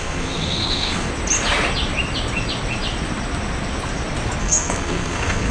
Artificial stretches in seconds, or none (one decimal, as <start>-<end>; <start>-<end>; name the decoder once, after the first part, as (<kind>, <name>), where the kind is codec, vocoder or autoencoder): 0.0-1.1 (codec, SNAC); 4.4-5.5